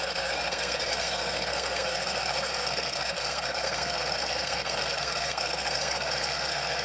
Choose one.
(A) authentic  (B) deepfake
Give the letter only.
B